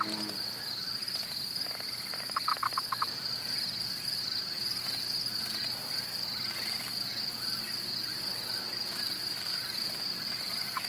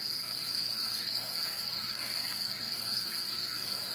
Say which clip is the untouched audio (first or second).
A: first